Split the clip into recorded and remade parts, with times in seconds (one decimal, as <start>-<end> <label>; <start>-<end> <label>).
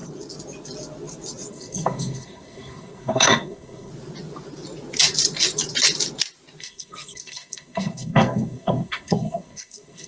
0.0-1.5 recorded; 1.5-3.9 remade; 3.9-6.6 recorded; 6.6-10.1 remade